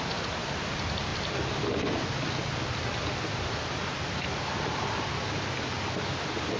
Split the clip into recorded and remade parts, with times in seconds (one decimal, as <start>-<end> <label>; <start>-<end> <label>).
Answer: 0.0-6.6 recorded